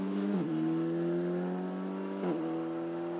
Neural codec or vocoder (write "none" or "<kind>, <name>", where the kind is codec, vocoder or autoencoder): none